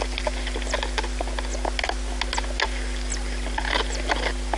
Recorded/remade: recorded